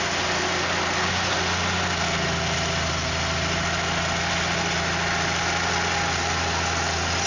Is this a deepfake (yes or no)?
no